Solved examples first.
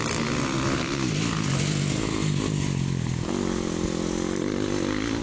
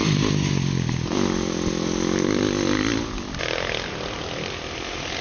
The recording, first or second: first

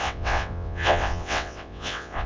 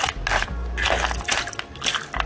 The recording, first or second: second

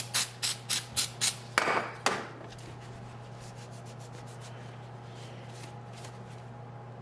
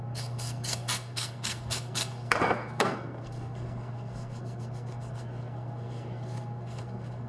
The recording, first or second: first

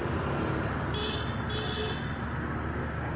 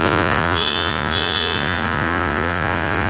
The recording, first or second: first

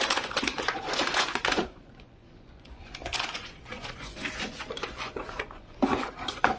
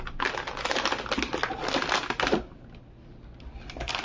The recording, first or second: second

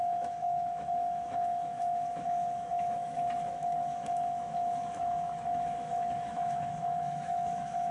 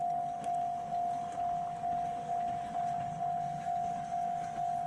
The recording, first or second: second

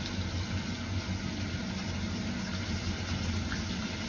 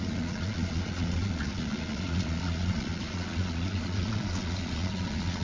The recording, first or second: first